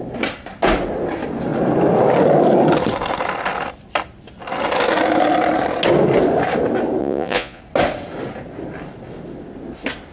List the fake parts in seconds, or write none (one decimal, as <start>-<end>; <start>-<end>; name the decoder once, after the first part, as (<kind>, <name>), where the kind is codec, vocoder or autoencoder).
7.0-7.6 (vocoder, Vocos)